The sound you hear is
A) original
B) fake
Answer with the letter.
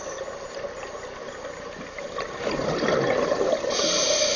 A